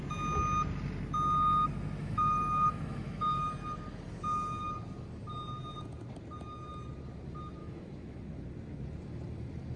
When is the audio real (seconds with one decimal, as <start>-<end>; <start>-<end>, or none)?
0.0-2.0; 3.5-7.6; 8.2-9.8